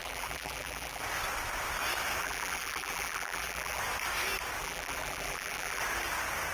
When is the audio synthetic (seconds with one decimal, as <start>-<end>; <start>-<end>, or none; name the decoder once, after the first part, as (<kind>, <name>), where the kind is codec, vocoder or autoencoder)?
0.0-1.0 (vocoder, BigVGAN v2); 2.2-3.8; 4.6-5.8